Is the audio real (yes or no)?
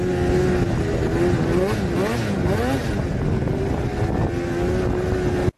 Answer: yes